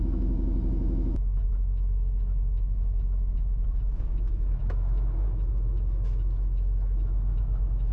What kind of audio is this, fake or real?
fake